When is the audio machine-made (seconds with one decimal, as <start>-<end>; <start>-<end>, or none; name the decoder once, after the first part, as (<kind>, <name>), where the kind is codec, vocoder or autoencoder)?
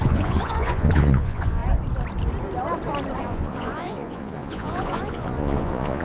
0.0-1.6 (vocoder, Vocos); 3.2-6.0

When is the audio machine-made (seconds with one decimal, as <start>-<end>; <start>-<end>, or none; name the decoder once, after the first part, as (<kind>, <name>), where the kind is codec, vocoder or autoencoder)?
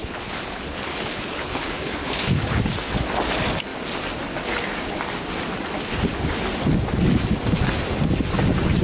0.0-2.6 (codec, HILCodec)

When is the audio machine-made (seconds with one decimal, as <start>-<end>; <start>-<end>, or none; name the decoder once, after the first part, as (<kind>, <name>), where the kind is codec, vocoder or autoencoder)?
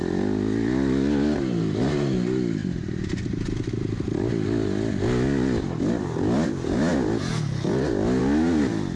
none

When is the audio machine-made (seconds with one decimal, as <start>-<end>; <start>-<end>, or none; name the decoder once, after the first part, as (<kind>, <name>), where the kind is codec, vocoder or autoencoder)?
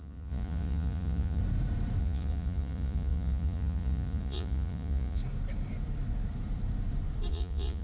0.0-1.4 (vocoder, Vocos); 2.0-5.2; 7.3-7.8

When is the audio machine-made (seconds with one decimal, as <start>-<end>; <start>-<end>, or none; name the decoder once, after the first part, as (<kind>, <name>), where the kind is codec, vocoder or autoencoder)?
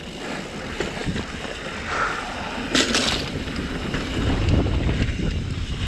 none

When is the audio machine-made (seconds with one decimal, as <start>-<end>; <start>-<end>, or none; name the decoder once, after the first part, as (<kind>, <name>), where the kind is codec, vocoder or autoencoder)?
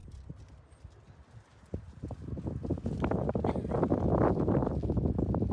none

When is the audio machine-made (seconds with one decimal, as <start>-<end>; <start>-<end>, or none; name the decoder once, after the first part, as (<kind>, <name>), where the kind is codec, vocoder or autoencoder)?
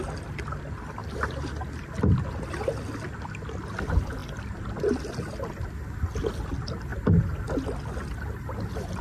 1.0-2.1 (vocoder, BigVGAN v2)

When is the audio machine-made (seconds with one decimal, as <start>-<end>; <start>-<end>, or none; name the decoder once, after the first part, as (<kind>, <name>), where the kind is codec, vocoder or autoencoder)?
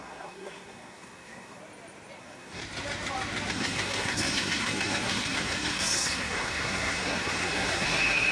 0.0-1.6 (codec, SNAC); 2.2-2.6; 3.5-8.3